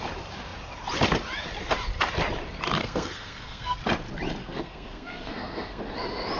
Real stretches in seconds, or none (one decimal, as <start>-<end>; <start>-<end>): 0.0-2.8; 3.8-4.4; 5.8-6.4